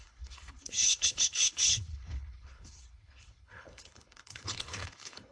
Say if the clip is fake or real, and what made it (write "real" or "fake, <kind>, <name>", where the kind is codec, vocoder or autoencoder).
fake, codec, HILCodec